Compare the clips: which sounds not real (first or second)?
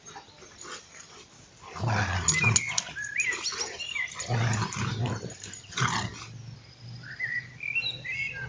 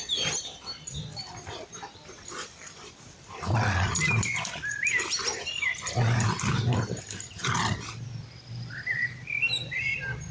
second